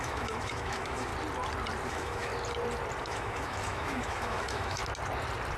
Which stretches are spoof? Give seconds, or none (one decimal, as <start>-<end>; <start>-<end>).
0.0-1.1; 1.9-2.3; 3.0-4.8